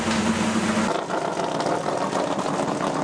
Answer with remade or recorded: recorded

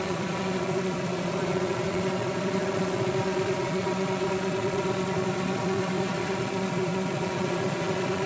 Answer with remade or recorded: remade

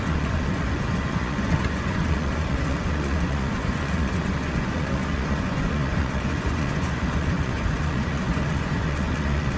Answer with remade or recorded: remade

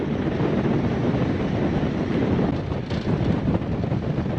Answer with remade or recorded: recorded